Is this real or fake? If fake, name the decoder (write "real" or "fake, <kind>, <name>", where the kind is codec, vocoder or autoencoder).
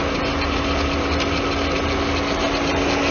real